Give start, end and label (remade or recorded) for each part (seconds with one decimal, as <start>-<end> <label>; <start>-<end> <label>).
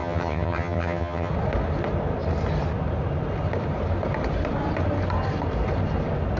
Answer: 0.0-1.3 remade; 1.3-6.4 recorded